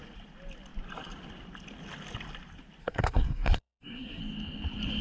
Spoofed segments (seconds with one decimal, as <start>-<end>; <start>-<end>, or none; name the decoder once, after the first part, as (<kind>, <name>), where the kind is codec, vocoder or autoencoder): 2.8-4.2 (codec, SNAC)